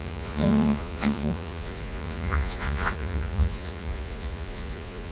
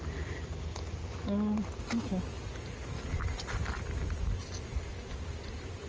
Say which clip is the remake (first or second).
first